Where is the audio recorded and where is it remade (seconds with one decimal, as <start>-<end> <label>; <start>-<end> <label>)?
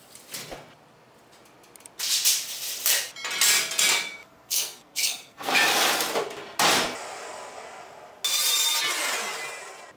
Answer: 0.0-4.2 recorded; 4.2-5.5 remade; 5.5-10.0 recorded